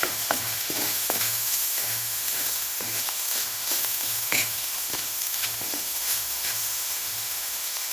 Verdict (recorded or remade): remade